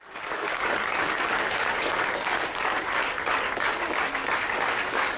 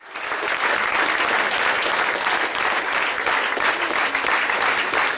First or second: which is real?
second